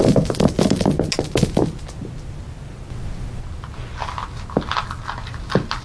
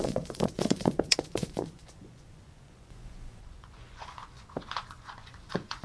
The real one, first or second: first